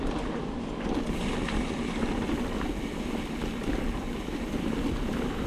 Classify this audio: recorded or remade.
recorded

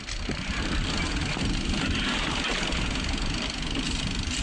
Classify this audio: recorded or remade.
recorded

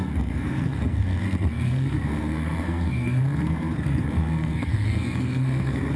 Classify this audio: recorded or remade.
remade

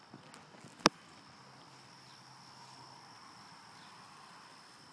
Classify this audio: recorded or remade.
recorded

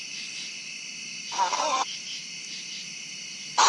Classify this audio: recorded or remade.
recorded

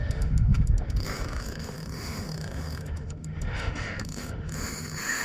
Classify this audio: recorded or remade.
remade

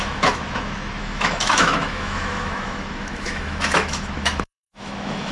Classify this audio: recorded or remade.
remade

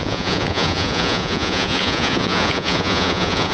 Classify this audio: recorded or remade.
remade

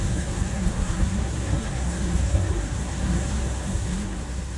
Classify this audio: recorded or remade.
remade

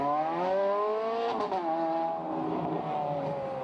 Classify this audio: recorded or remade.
recorded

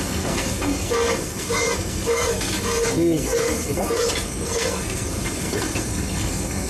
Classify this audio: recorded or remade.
remade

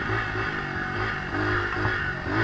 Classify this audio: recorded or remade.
recorded